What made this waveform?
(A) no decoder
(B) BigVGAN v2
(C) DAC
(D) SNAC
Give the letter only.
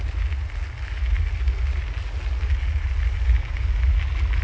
A